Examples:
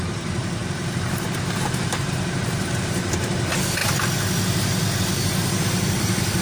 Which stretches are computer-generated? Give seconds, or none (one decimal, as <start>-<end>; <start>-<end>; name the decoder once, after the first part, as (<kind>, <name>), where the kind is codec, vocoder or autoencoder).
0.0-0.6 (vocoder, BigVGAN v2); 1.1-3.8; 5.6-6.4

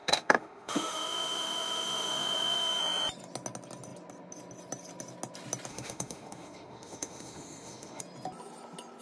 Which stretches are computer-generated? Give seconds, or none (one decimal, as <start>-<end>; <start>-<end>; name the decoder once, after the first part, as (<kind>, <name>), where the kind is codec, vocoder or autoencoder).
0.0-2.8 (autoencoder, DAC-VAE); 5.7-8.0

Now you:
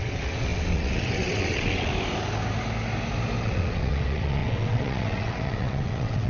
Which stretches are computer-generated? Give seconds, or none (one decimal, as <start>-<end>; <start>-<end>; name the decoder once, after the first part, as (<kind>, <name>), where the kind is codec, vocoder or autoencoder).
0.0-1.9 (vocoder, WaveNeXt); 3.4-6.3

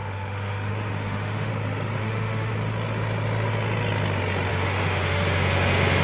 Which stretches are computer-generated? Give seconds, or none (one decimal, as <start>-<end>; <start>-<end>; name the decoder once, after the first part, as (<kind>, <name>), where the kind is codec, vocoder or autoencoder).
0.0-1.5 (autoencoder, DAC-VAE); 2.0-2.5; 4.5-6.0